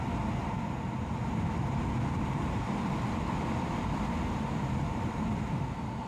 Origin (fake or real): real